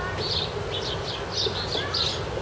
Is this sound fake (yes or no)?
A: no